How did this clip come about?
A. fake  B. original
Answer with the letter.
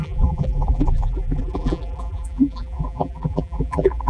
A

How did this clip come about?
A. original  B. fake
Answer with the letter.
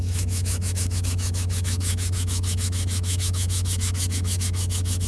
B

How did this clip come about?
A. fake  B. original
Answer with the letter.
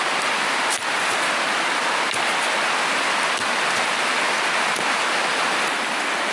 B